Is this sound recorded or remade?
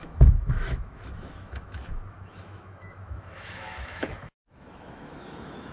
remade